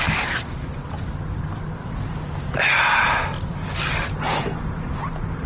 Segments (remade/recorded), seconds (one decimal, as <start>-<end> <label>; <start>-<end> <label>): 0.0-0.8 remade; 0.8-4.1 recorded; 4.1-5.5 remade